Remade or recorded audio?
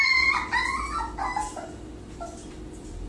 recorded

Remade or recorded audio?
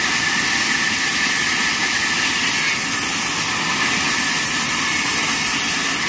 recorded